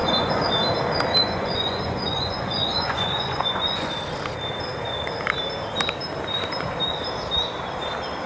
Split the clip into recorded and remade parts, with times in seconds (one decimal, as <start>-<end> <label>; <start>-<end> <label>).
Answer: 0.0-0.5 remade; 0.5-1.2 recorded; 1.2-3.9 remade; 3.9-8.3 recorded